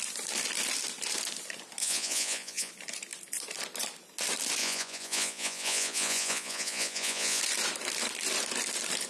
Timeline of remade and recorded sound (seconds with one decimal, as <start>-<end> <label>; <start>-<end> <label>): 0.0-1.8 recorded; 1.8-2.7 remade; 2.7-4.6 recorded; 4.6-7.4 remade; 7.4-9.1 recorded